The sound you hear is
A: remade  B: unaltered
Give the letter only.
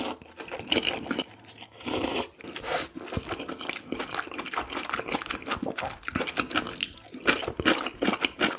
B